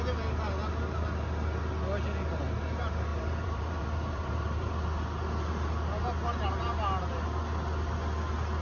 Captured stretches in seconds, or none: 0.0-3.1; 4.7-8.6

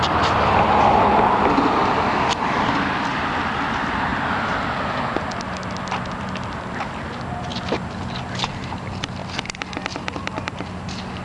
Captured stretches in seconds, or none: 4.1-6.9